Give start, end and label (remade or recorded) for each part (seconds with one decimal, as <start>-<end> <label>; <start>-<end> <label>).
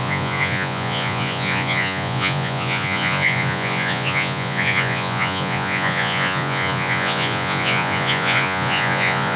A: 0.0-9.4 remade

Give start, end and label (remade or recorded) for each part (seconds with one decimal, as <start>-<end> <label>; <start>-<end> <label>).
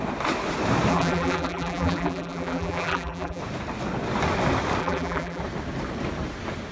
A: 0.0-0.9 recorded; 0.9-3.4 remade; 3.4-4.8 recorded; 4.8-5.4 remade; 5.4-6.7 recorded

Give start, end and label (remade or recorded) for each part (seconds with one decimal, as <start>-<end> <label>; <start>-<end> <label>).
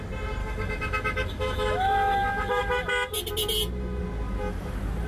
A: 0.0-0.4 recorded; 0.4-2.9 remade; 2.9-5.1 recorded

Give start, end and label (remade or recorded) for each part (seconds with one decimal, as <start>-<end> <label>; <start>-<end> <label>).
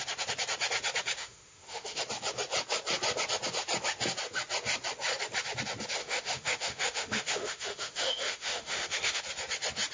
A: 0.0-1.2 recorded; 1.2-2.0 remade; 2.0-6.0 recorded; 6.0-9.2 remade; 9.2-9.9 recorded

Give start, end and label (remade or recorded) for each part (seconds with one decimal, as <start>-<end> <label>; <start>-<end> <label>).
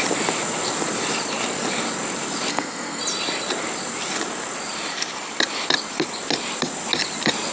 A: 0.0-2.5 recorded; 2.5-3.0 remade; 3.0-7.5 recorded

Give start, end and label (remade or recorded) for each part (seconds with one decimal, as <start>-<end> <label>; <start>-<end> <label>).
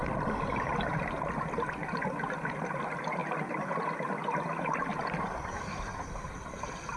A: 0.0-3.2 recorded; 3.2-3.8 remade; 3.8-4.9 recorded; 4.9-6.3 remade; 6.3-7.0 recorded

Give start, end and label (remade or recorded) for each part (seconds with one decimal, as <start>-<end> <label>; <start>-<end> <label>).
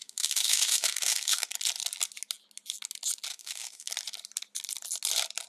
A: 0.0-1.5 remade; 1.5-3.3 recorded; 3.3-3.9 remade; 3.9-5.5 recorded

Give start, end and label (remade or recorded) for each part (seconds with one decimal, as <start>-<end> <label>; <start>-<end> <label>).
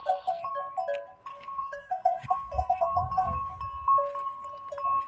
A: 0.0-0.5 remade; 0.5-1.3 recorded; 1.3-3.5 remade; 3.5-5.1 recorded